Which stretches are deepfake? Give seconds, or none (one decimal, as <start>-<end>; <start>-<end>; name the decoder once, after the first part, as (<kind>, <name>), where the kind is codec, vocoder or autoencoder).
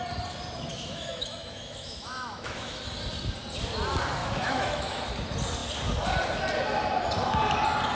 0.7-2.8 (autoencoder, DAC-VAE); 4.2-5.1